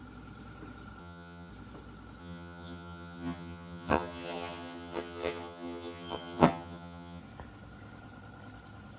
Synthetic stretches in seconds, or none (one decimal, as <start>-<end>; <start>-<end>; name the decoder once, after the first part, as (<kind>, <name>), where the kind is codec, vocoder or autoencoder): 1.0-1.5 (vocoder, HiFi-GAN); 2.2-7.2